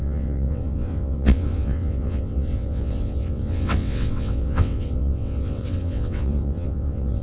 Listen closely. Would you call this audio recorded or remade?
remade